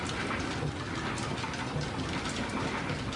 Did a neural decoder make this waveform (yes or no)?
no